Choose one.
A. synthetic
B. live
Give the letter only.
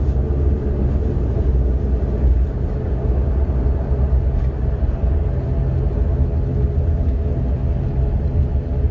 B